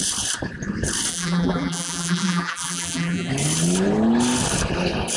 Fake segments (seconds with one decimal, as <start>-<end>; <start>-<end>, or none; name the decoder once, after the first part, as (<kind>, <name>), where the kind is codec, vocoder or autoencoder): 1.1-3.3 (vocoder, BigVGAN v2)